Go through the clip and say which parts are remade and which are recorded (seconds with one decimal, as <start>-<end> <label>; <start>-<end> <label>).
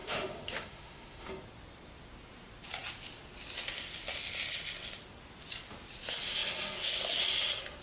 0.0-1.3 remade; 1.3-7.8 recorded